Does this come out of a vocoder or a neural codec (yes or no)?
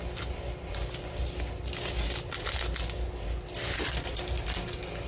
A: no